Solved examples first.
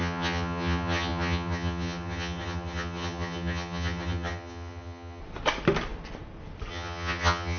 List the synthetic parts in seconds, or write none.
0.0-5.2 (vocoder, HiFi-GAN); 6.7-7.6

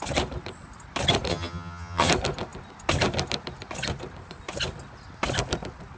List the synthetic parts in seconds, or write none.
1.3-2.1 (vocoder, HiFi-GAN)

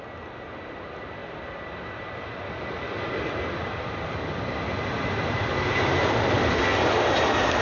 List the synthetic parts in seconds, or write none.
none